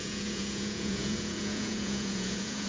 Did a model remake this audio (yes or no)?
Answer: yes